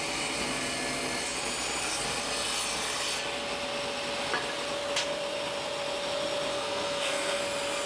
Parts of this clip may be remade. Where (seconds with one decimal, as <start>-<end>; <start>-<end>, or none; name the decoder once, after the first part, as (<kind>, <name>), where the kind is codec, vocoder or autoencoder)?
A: 6.5-7.4 (codec, SNAC)